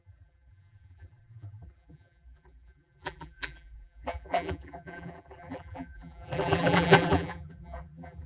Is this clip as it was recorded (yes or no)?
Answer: no